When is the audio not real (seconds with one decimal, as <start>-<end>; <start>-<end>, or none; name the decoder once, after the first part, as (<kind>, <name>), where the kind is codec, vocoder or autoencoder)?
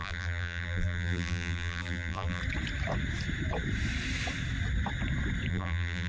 0.0-2.4 (vocoder, BigVGAN v2); 5.5-6.1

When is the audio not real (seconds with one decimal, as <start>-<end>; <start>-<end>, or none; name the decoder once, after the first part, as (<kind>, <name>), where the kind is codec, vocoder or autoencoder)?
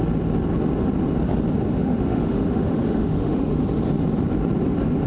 1.8-3.6 (autoencoder, DAC-VAE)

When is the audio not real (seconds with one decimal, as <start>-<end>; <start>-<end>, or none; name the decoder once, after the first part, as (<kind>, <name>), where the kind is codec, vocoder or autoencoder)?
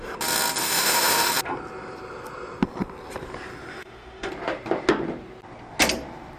0.6-1.3 (autoencoder, DAC-VAE); 3.7-4.3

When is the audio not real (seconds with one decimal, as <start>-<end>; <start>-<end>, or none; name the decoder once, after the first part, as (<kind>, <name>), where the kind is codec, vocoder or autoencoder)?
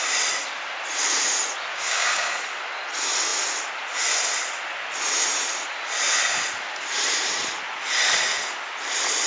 1.7-2.3 (codec, DAC)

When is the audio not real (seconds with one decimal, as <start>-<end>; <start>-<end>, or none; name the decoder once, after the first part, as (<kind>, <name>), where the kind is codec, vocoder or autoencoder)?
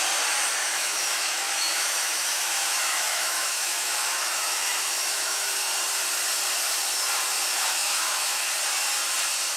0.6-5.6 (autoencoder, DAC-VAE); 7.5-8.5